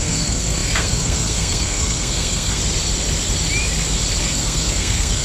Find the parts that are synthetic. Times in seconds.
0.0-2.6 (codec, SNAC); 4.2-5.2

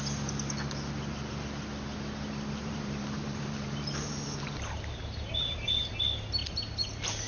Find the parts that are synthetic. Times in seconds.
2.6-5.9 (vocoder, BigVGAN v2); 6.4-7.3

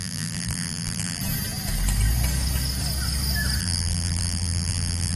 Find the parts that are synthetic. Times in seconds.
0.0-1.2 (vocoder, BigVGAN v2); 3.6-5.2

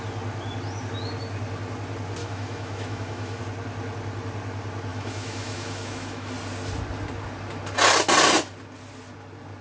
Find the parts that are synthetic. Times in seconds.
2.2-3.4 (autoencoder, DAC-VAE); 4.9-6.3